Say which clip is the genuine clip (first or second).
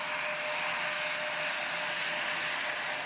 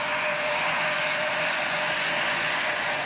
first